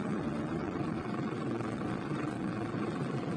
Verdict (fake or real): fake